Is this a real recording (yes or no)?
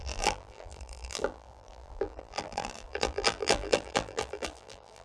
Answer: no